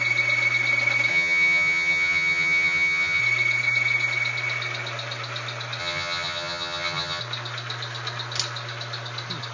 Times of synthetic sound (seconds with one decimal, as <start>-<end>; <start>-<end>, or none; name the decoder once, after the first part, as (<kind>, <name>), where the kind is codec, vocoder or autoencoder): 1.1-3.2 (vocoder, HiFi-GAN); 5.8-7.2